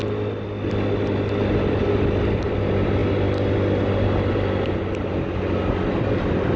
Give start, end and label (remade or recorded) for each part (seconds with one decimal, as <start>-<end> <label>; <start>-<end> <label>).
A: 0.0-6.6 recorded

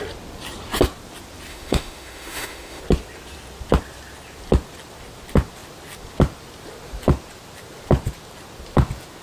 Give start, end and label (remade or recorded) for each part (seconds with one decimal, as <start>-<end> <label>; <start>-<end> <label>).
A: 0.0-1.5 recorded; 1.5-2.8 remade; 2.8-9.2 recorded

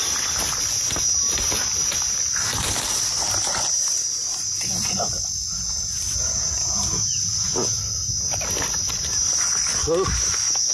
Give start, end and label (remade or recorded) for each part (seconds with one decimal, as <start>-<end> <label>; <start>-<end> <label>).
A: 0.0-10.7 recorded

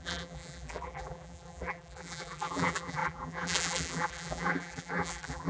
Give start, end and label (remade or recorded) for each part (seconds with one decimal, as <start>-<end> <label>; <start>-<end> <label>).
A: 0.0-5.5 remade

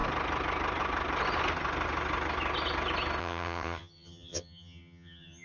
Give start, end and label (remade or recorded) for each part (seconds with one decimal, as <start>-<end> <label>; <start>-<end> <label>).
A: 0.0-3.2 recorded; 3.2-5.4 remade

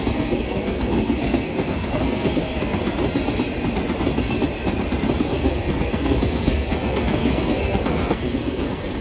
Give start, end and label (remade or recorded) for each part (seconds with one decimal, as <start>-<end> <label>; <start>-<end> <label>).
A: 0.0-2.8 remade; 2.8-5.2 recorded; 5.2-9.0 remade

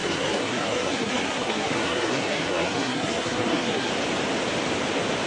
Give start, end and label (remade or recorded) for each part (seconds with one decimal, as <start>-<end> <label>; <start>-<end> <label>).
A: 0.0-3.9 remade; 3.9-5.3 recorded

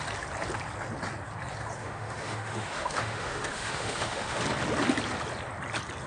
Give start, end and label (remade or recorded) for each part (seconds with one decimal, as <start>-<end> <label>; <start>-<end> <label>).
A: 0.0-1.8 recorded; 1.8-4.4 remade; 4.4-6.1 recorded